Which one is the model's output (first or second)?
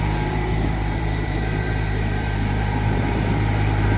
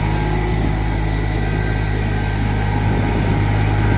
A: first